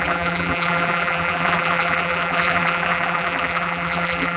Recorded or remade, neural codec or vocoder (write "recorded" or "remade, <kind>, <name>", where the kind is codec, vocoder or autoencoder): remade, vocoder, BigVGAN v2